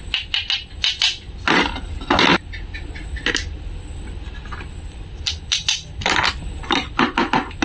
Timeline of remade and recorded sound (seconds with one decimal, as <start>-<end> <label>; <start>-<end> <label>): 0.0-7.6 recorded